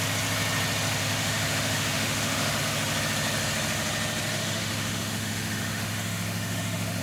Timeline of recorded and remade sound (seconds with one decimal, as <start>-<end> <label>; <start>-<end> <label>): 0.0-1.0 recorded; 1.0-2.6 remade; 2.6-4.3 recorded; 4.3-7.0 remade